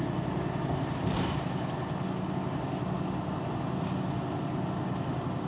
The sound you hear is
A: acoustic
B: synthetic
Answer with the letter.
A